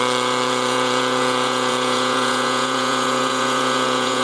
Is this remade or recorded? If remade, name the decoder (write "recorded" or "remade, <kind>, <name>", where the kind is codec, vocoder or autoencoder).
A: remade, vocoder, Vocos